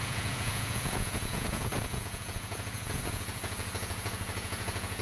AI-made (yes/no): yes